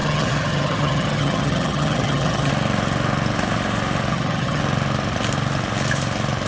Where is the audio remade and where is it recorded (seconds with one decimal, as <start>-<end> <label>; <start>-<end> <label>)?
0.0-2.5 remade; 2.5-4.1 recorded; 4.1-4.6 remade; 4.6-6.5 recorded